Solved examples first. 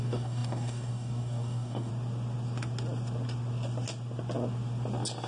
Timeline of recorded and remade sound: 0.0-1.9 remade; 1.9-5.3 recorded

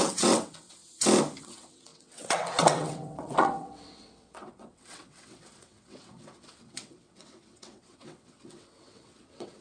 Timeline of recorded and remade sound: 0.0-0.8 remade; 0.8-1.4 recorded; 1.4-9.6 remade